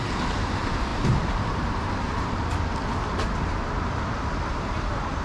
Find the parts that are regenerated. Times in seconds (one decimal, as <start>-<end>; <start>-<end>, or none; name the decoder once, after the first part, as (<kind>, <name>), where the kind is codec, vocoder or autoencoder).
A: 0.0-2.5 (vocoder, BigVGAN v2); 4.5-5.2